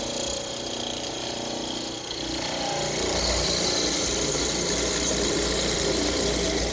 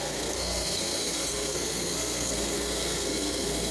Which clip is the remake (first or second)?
second